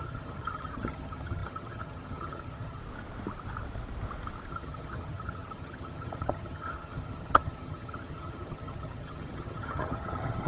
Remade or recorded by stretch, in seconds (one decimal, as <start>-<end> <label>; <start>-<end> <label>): 0.0-2.8 remade; 2.8-4.5 recorded; 4.5-10.5 remade